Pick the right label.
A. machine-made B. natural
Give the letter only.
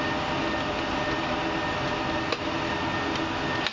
B